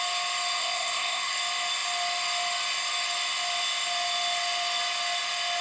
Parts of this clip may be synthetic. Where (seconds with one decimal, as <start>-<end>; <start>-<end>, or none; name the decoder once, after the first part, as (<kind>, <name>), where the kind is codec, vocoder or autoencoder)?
0.6-1.3 (codec, ZipCodec)